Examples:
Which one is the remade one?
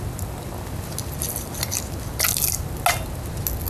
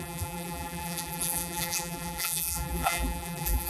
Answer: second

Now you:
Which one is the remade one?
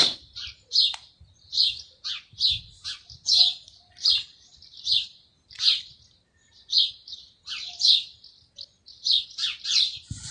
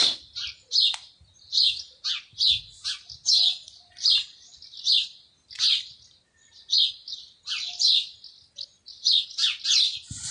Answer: first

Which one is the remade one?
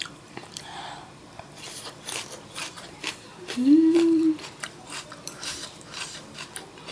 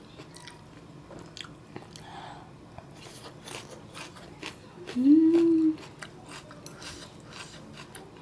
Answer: first